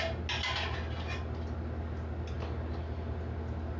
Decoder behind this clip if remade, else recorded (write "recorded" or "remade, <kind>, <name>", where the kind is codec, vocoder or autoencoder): recorded